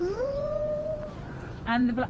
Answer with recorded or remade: remade